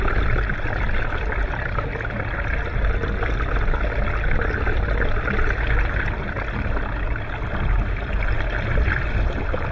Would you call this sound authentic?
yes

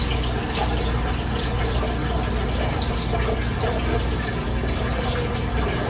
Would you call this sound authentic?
yes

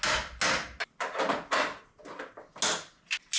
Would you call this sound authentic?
yes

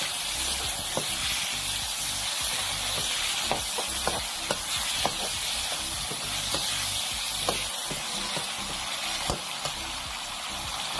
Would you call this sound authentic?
yes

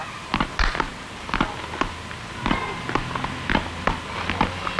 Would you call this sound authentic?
yes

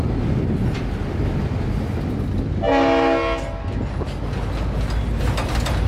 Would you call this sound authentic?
yes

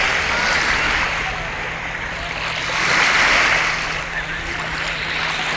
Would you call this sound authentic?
yes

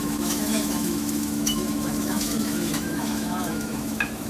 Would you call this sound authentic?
no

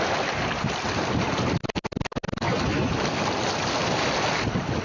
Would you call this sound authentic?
yes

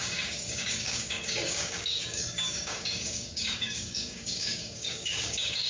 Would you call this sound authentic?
no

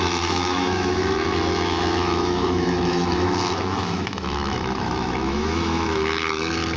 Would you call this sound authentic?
no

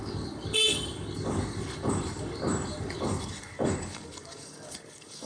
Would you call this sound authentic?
no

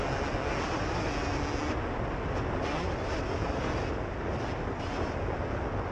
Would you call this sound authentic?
yes